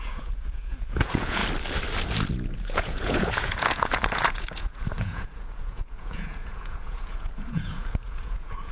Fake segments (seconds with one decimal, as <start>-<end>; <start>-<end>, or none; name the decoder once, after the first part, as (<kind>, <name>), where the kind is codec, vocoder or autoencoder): 0.0-1.4 (vocoder, Vocos); 2.3-8.7